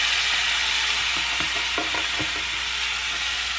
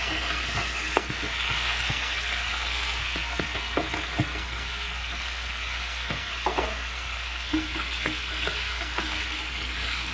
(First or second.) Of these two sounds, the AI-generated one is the second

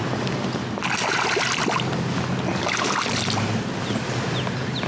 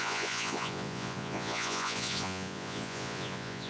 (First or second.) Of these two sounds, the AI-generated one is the second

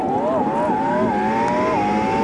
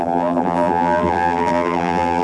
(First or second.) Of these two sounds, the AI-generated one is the second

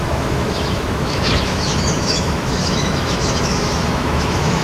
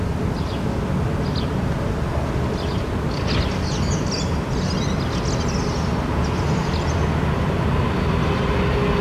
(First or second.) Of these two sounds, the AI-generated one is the first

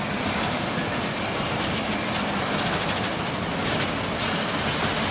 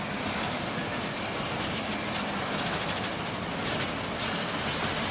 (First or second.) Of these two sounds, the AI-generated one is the first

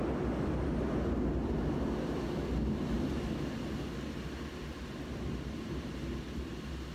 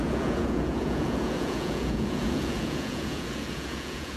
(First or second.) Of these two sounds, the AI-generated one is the second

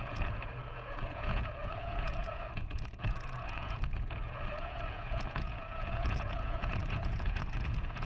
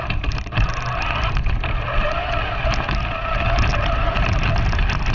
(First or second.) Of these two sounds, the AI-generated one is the first